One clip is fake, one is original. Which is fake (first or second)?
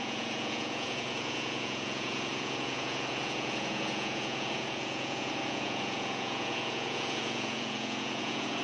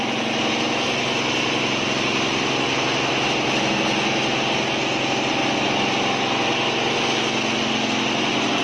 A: first